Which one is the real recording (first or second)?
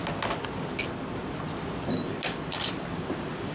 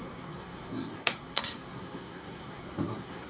first